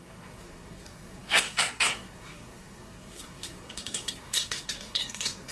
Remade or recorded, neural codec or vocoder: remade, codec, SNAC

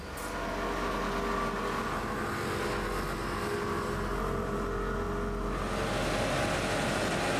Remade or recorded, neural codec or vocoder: recorded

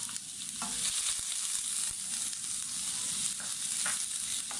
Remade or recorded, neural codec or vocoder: recorded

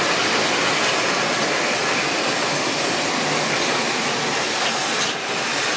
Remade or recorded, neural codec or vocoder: recorded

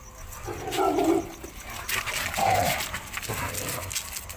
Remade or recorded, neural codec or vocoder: recorded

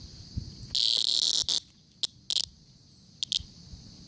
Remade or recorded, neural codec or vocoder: recorded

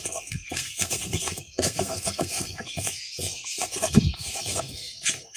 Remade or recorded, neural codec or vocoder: remade, codec, SNAC